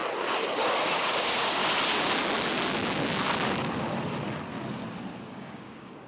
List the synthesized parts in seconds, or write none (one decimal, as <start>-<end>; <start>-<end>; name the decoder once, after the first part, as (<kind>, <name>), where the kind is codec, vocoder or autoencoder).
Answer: 0.5-1.6 (codec, DAC); 5.3-6.1